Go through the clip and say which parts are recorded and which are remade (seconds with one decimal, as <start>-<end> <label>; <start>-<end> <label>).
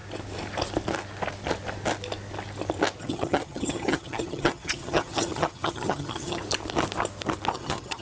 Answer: 0.0-3.0 recorded; 3.0-6.4 remade; 6.4-7.5 recorded; 7.5-8.0 remade